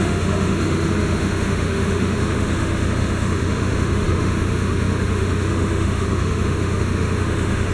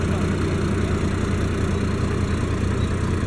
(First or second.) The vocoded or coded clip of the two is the first